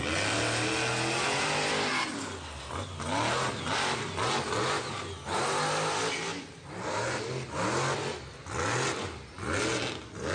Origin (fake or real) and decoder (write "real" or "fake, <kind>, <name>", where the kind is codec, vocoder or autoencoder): real